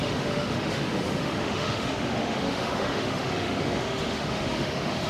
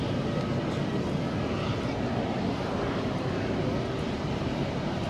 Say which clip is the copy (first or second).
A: first